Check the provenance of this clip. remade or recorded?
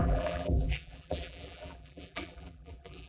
remade